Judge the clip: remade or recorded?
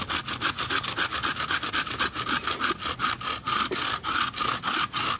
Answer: recorded